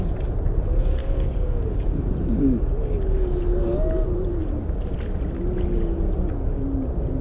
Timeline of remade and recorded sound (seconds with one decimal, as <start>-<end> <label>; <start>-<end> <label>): 0.0-1.0 recorded; 1.0-2.1 remade; 2.1-7.2 recorded